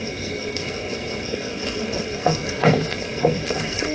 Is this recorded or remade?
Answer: remade